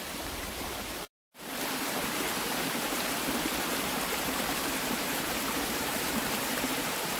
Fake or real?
fake